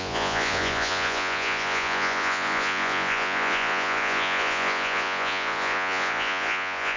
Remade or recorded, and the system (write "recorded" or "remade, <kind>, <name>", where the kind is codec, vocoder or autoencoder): remade, vocoder, Vocos